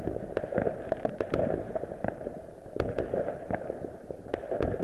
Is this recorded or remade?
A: remade